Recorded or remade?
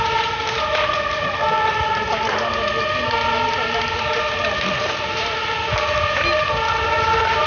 recorded